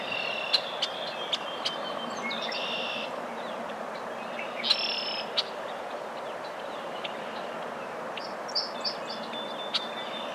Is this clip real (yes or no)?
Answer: yes